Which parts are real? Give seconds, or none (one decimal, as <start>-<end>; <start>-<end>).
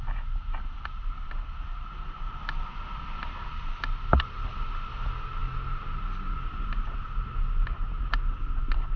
0.0-9.0